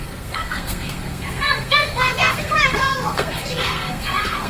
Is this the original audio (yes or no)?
no